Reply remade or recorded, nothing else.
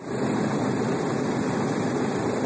recorded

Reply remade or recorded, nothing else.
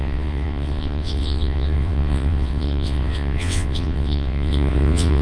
remade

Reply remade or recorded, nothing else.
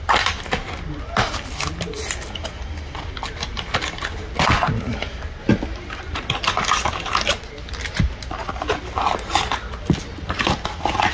recorded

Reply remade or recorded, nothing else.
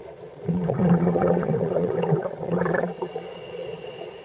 remade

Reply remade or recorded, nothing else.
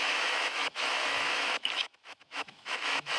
remade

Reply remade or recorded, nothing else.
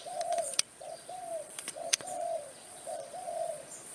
remade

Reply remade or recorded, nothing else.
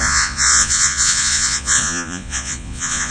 remade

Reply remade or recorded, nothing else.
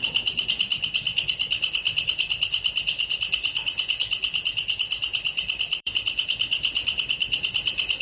remade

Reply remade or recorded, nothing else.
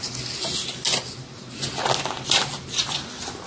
recorded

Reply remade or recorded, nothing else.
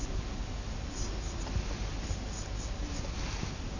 recorded